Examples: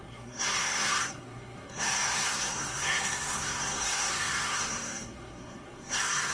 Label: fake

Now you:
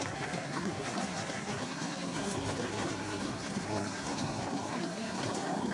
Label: fake